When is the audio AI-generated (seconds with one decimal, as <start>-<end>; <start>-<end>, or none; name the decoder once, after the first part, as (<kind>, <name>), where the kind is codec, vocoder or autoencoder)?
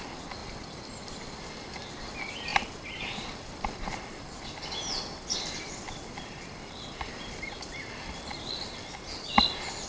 0.4-1.2 (vocoder, BigVGAN v2); 2.5-7.6